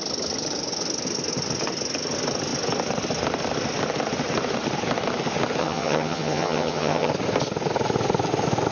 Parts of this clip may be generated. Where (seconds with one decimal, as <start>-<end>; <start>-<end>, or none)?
5.6-7.1